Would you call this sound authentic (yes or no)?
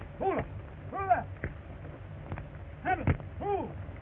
yes